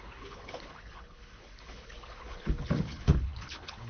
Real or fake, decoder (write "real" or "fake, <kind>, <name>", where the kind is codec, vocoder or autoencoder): fake, codec, HILCodec